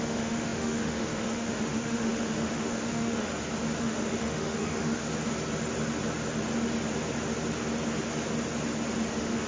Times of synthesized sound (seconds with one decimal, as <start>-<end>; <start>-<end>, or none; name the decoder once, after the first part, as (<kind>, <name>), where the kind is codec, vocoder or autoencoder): 0.0-3.3 (autoencoder, DAC-VAE); 3.8-5.0; 9.1-9.5

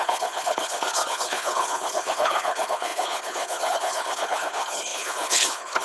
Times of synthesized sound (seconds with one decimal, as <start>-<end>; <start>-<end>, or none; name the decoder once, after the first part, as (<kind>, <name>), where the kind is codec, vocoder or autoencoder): 0.0-5.8 (codec, HILCodec)

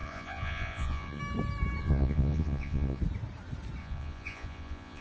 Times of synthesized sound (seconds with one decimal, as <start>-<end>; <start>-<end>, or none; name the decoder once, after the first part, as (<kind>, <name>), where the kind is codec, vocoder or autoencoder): 0.0-1.2 (vocoder, Vocos); 1.8-3.0; 3.8-5.0

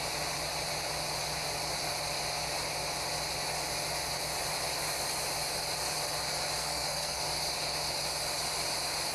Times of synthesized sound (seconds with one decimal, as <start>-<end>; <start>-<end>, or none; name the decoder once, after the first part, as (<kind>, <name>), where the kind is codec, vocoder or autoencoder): 6.6-7.2 (codec, SNAC)

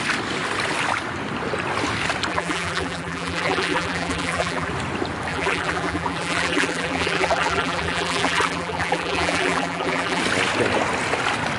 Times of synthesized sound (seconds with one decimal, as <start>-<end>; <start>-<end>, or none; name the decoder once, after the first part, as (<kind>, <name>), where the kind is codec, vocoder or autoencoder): 2.3-4.7 (vocoder, BigVGAN v2); 5.3-10.2

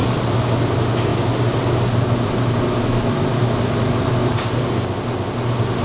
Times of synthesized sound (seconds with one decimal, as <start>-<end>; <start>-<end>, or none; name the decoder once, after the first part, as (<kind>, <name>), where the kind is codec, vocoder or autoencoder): none

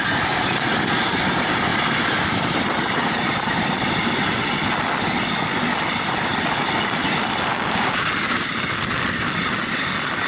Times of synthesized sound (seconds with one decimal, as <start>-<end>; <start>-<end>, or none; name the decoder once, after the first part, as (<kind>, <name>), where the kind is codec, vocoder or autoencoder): 7.5-8.1 (codec, DAC)